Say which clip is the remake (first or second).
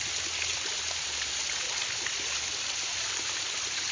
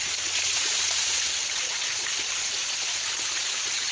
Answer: second